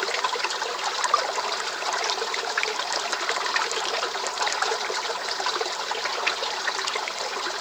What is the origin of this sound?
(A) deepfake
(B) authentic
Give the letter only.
B